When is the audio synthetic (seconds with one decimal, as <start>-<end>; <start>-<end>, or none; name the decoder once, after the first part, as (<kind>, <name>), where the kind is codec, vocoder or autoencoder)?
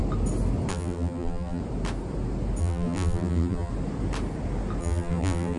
0.7-1.6 (vocoder, BigVGAN v2); 2.6-3.7; 4.8-5.6